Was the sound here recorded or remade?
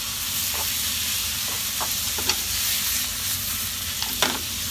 recorded